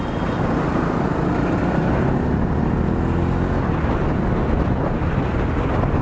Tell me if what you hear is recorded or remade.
recorded